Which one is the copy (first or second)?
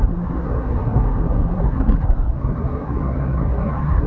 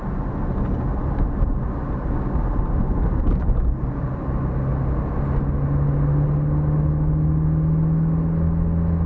first